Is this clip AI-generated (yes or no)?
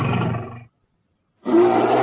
no